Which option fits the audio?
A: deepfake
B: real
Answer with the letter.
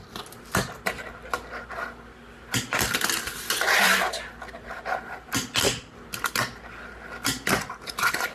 B